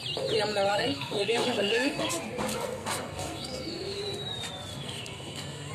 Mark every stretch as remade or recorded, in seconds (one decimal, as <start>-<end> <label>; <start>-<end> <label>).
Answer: 0.0-0.7 recorded; 0.7-2.1 remade; 2.1-2.5 recorded; 2.5-4.0 remade; 4.0-4.7 recorded; 4.7-5.7 remade